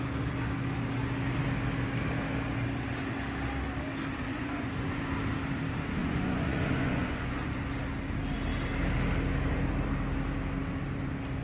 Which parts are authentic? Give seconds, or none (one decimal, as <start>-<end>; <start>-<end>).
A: 0.0-4.3; 5.0-6.0; 7.6-11.4